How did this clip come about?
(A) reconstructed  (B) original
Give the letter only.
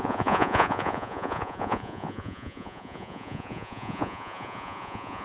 A